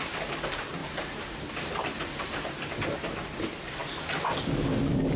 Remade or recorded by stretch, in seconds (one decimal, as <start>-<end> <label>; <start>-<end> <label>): 0.0-0.8 recorded; 0.8-3.4 remade; 3.4-5.2 recorded